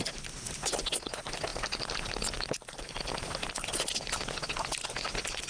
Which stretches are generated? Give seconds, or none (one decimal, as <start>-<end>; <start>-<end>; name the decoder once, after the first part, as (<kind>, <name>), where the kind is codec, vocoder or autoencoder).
none